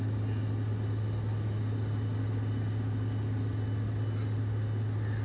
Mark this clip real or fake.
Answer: real